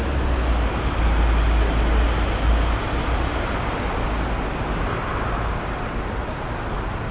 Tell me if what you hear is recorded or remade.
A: recorded